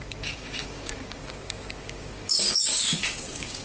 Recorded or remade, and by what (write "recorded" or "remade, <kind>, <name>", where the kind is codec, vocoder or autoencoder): remade, codec, DAC